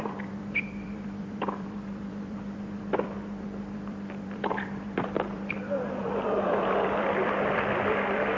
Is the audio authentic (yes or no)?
no